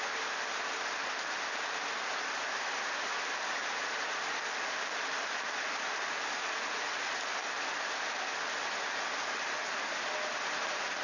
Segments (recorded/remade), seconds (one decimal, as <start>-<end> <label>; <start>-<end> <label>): 0.0-11.0 recorded